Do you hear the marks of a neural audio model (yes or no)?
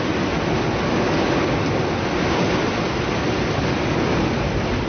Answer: no